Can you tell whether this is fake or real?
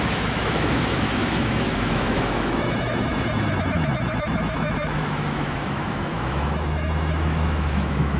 fake